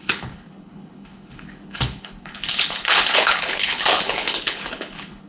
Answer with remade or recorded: remade